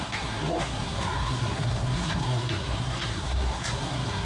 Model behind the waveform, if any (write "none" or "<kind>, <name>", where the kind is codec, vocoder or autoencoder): codec, SNAC